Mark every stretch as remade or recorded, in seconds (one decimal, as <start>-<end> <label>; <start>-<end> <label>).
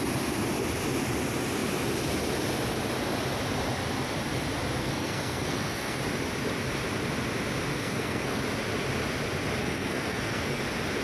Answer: 0.0-4.8 recorded; 4.8-6.0 remade; 6.0-7.7 recorded; 7.7-8.4 remade; 8.4-9.6 recorded; 9.6-10.6 remade; 10.6-11.0 recorded